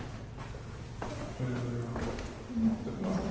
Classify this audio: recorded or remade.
recorded